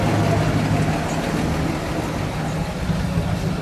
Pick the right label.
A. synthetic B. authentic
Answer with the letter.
B